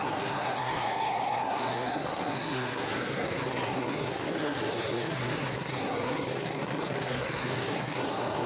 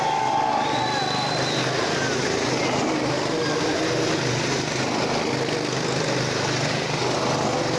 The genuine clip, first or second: second